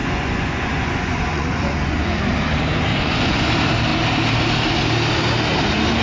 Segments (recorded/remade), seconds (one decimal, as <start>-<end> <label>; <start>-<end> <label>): 0.0-2.2 remade; 2.2-2.9 recorded; 2.9-3.5 remade; 3.5-6.0 recorded